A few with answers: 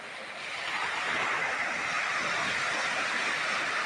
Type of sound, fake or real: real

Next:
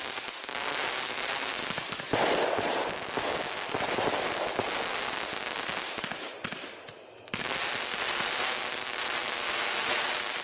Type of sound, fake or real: real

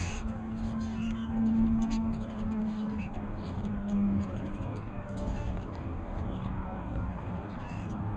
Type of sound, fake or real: fake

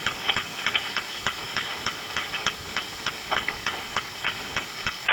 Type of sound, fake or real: fake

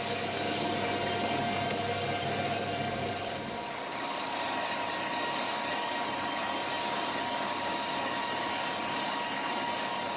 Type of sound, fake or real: fake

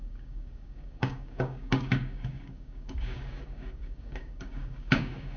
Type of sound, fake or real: fake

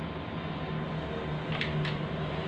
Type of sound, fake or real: real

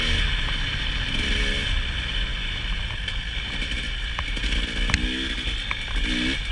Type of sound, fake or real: real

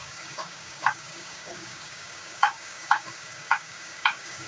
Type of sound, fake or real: fake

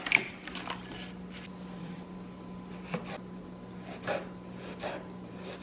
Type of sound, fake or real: real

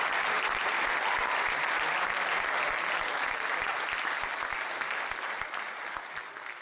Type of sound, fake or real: real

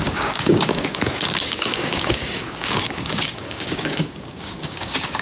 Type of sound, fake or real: fake